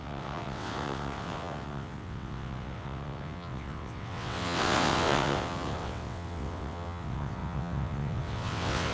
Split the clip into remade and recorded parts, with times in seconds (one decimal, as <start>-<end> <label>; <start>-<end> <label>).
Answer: 0.0-8.9 remade